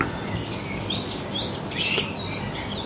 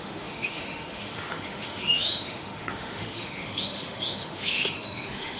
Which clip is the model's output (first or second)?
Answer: second